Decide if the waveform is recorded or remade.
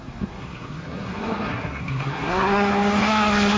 remade